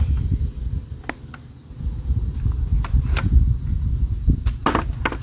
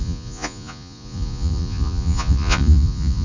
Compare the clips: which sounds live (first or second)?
first